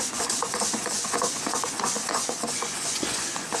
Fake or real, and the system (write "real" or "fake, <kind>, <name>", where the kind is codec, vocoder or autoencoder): fake, vocoder, Vocos